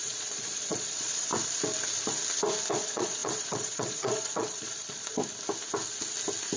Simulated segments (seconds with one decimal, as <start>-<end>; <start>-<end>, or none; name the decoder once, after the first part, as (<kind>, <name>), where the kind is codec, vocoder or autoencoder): 0.0-1.3 (vocoder, Vocos); 2.7-5.2